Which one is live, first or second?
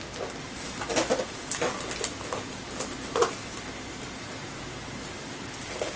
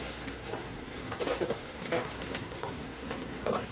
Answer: first